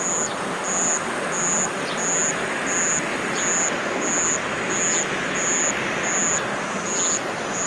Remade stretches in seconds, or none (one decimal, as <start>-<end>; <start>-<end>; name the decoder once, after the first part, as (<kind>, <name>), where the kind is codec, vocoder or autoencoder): none

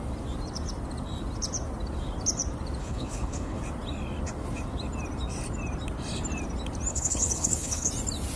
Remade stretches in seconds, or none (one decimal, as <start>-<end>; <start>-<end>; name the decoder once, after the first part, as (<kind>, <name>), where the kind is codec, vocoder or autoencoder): 2.8-3.6 (codec, HILCodec); 6.9-7.9